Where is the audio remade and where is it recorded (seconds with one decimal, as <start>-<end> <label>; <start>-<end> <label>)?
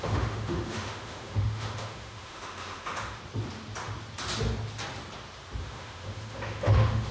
0.0-3.2 remade; 3.2-5.6 recorded; 5.6-7.1 remade